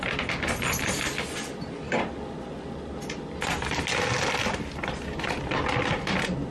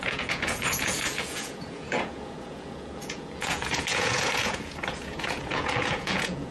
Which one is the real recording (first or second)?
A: first